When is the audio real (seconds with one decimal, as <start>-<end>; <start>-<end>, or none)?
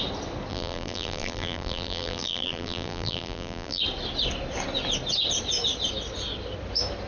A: 0.0-0.5; 3.8-7.1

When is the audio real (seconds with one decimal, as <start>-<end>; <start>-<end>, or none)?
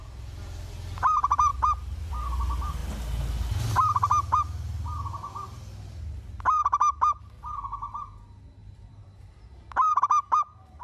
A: 0.0-8.6; 10.0-10.8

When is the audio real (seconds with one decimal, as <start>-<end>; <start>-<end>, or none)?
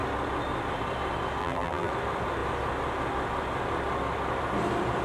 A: 0.0-1.4; 1.9-5.0